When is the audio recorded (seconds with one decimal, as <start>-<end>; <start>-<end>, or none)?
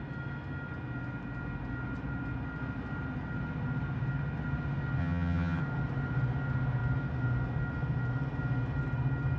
0.0-5.0; 5.6-9.4